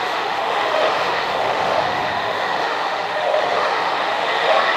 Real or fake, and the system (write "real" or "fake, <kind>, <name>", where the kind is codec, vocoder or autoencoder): fake, autoencoder, DAC-VAE